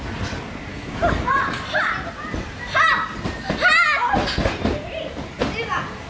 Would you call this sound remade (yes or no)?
no